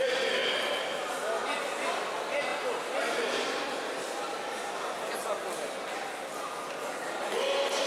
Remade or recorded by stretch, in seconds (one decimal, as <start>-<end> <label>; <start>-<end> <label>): 0.0-7.9 recorded